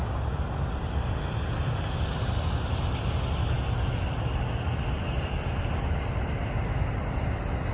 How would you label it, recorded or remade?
recorded